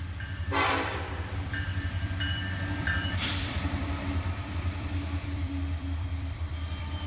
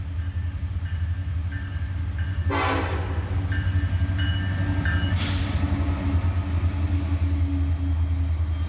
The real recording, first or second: second